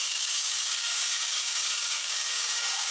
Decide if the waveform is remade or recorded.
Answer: remade